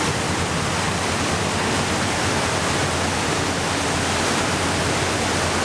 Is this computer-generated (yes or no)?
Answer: no